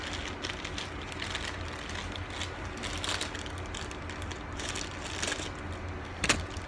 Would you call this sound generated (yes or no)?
no